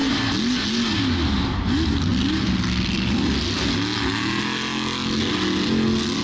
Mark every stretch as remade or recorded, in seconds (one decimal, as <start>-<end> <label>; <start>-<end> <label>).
0.0-6.2 recorded